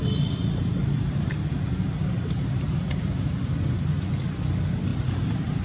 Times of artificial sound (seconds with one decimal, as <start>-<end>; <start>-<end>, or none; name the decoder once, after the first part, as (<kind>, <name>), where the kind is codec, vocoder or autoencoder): 0.8-3.4 (vocoder, BigVGAN v2); 4.9-5.6